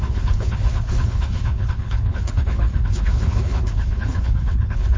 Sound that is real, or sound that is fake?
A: fake